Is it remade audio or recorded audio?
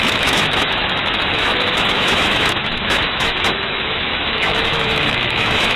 remade